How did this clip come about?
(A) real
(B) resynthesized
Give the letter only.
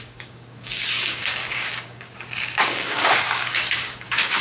B